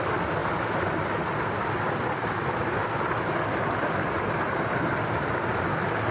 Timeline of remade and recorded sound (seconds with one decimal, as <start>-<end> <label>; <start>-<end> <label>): 0.0-6.1 recorded